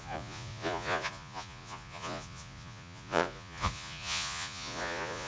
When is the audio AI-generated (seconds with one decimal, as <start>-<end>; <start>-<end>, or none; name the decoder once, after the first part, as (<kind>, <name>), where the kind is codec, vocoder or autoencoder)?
0.0-5.3 (vocoder, Vocos)